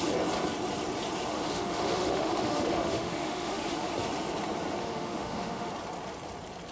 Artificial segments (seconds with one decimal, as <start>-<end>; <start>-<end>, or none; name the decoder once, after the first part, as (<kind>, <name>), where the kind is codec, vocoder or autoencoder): 1.3-3.9 (autoencoder, DAC-VAE); 4.8-5.7